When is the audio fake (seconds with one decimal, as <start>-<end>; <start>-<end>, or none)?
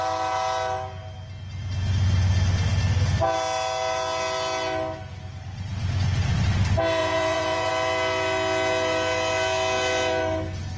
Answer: 7.0-7.7